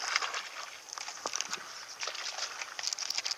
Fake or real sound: real